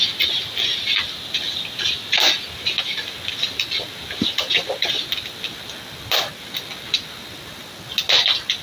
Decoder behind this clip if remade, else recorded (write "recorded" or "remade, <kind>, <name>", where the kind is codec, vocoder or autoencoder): recorded